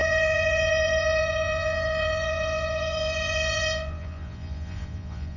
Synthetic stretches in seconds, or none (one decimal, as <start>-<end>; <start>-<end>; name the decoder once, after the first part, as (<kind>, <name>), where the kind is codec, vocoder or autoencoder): 0.0-5.4 (vocoder, Vocos)